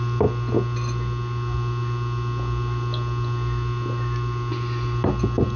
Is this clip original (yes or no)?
yes